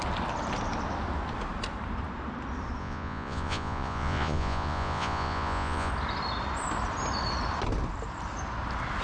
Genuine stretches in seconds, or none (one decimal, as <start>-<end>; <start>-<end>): 0.0-2.8; 5.9-9.0